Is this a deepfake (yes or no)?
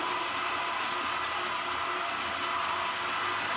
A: no